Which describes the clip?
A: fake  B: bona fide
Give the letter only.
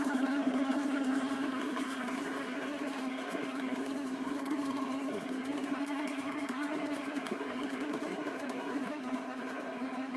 A